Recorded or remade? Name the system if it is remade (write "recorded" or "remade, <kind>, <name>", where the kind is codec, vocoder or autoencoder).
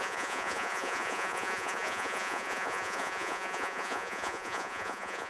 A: remade, vocoder, Vocos